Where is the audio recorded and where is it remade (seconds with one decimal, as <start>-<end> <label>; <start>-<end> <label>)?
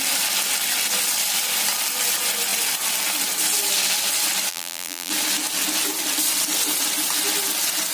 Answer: 0.0-4.5 recorded; 4.5-5.1 remade; 5.1-7.9 recorded